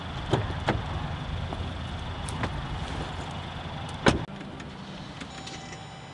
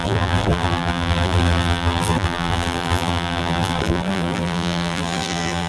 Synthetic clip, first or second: second